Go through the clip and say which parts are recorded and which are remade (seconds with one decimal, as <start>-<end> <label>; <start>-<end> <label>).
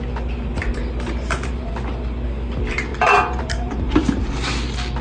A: 0.0-0.8 recorded; 0.8-1.7 remade; 1.7-2.9 recorded; 2.9-4.0 remade; 4.0-5.0 recorded